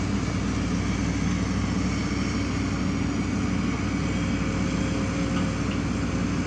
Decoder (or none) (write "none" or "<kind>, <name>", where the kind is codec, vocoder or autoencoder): none